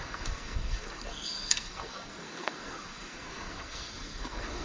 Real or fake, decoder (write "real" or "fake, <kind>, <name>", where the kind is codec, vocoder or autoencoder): fake, codec, SNAC